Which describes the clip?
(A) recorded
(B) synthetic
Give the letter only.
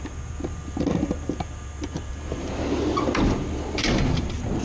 A